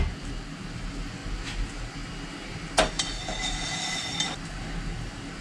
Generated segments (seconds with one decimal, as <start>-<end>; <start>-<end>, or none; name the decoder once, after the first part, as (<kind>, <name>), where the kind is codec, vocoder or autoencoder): none